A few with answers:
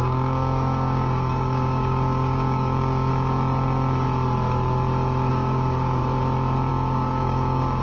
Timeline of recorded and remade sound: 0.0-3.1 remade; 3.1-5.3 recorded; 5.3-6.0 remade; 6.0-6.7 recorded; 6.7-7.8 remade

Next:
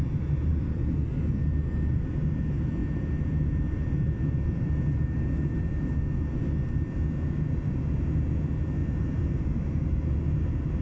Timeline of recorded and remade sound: 0.0-0.5 recorded; 0.5-1.1 remade; 1.1-2.8 recorded; 2.8-5.9 remade; 5.9-8.8 recorded; 8.8-9.3 remade; 9.3-10.8 recorded

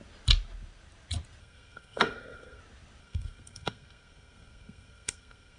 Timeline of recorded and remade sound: 0.0-1.4 recorded; 1.4-2.6 remade; 2.6-3.0 recorded; 3.0-5.6 remade